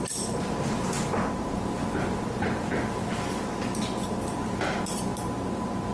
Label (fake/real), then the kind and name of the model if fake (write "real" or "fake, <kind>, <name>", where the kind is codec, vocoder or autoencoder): real